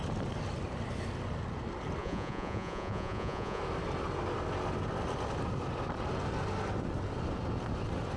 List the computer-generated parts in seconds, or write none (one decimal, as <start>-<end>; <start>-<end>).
2.0-3.6